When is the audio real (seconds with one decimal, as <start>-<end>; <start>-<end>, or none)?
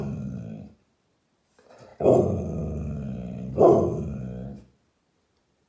0.0-3.9; 4.7-5.7